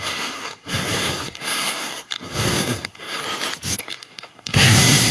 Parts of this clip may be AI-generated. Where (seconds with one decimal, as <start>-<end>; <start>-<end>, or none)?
0.0-3.2; 3.8-5.1